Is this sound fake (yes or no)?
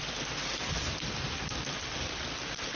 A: no